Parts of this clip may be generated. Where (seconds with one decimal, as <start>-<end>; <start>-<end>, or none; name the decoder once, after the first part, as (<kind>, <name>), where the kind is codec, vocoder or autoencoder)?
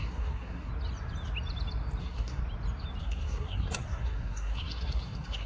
0.0-0.7 (codec, SNAC); 2.0-2.4; 3.0-5.5